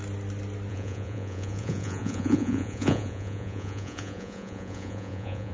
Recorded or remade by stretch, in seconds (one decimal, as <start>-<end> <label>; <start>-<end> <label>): 0.0-0.7 recorded; 0.7-5.5 remade